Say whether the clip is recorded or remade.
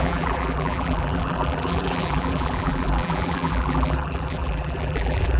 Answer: remade